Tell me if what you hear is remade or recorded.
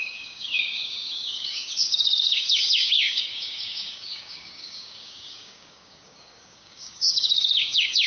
remade